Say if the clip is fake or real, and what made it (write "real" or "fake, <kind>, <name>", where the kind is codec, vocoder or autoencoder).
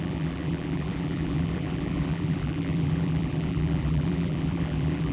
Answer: fake, vocoder, BigVGAN v2